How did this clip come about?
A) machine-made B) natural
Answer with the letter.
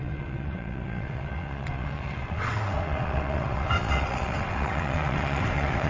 A